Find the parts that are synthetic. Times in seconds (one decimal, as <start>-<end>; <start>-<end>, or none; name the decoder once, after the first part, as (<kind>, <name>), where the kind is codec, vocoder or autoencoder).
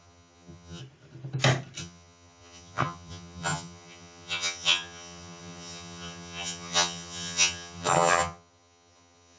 0.0-0.8 (vocoder, HiFi-GAN); 1.8-9.4